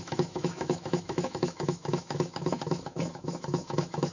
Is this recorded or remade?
remade